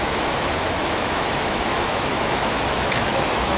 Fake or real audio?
fake